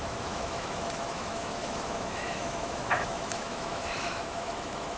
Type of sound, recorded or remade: remade